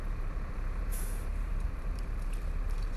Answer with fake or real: fake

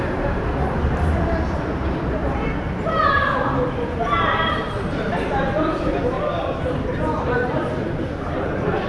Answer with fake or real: fake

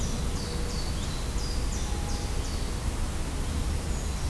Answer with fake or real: real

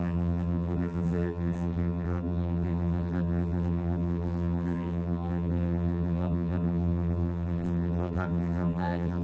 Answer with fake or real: fake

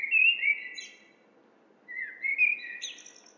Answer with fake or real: real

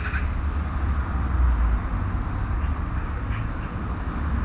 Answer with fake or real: real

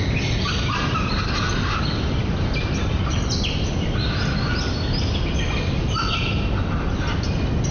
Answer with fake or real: real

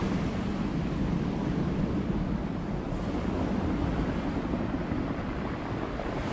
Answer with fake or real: real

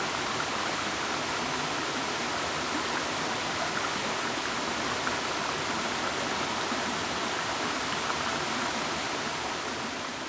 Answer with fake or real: real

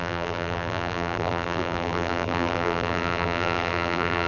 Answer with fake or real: fake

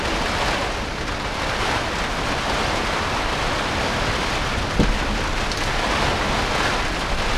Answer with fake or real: real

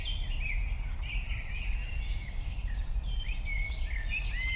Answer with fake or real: real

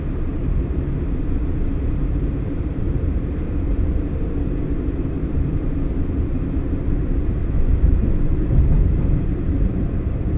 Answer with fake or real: fake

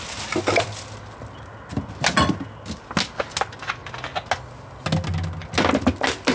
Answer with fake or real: real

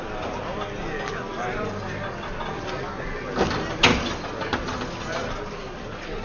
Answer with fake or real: real